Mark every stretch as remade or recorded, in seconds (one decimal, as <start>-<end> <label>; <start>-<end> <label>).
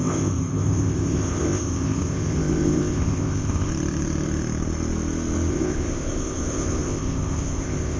0.0-3.7 remade; 3.7-5.5 recorded; 5.5-8.0 remade